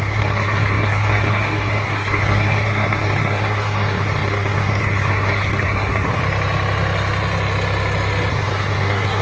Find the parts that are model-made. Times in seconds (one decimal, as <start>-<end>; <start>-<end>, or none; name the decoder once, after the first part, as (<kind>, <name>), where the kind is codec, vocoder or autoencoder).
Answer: 0.0-6.2 (codec, SNAC); 8.3-9.2